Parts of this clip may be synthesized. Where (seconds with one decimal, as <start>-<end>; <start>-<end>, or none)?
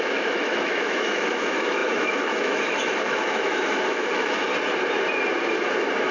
0.0-4.5